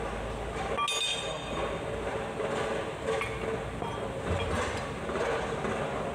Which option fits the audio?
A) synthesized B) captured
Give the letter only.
B